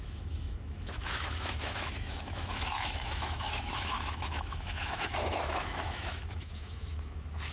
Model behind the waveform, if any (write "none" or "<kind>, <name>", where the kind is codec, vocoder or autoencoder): autoencoder, DAC-VAE